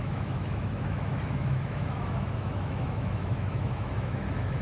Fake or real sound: fake